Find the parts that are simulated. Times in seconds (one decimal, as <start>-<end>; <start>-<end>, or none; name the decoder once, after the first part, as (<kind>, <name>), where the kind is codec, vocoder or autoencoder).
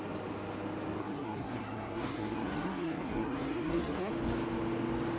1.0-4.1 (codec, SNAC)